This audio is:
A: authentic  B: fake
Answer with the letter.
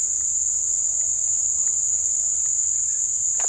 A